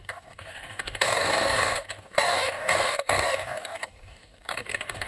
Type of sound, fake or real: fake